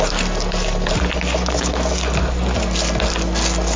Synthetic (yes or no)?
no